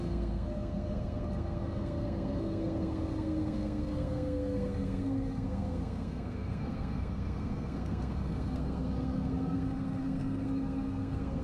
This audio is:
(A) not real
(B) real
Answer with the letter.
A